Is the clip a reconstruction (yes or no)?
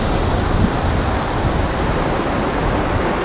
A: no